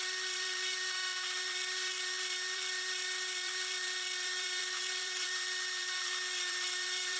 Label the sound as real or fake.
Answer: fake